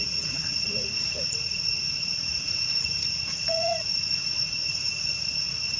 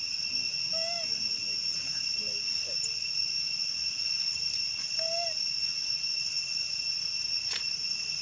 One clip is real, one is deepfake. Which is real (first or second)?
second